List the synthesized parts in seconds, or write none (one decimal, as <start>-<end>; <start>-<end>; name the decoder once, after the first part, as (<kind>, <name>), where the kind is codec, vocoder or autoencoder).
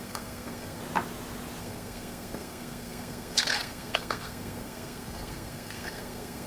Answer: 0.0-0.8 (codec, SNAC); 1.6-6.5